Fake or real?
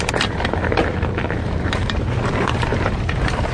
fake